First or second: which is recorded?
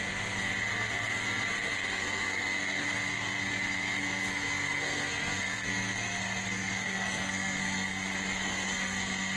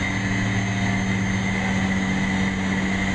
second